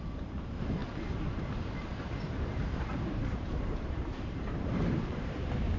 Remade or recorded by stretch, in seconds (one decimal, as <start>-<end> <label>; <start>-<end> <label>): 0.0-5.8 remade